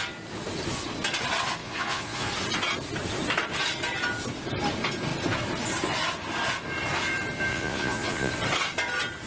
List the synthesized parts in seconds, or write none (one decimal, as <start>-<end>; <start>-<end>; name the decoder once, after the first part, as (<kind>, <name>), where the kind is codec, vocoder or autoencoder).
1.6-2.3 (vocoder, Vocos); 7.5-8.3